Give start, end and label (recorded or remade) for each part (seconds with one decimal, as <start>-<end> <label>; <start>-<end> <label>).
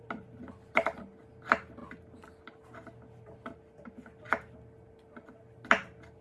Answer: 0.0-6.2 recorded